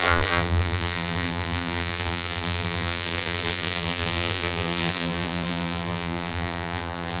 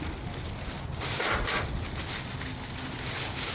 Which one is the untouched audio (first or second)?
second